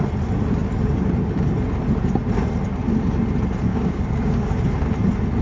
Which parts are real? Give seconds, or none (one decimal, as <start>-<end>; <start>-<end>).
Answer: 0.0-3.7; 4.6-5.4